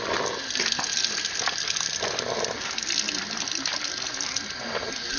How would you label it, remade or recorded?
recorded